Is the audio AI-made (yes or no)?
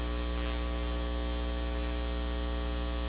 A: no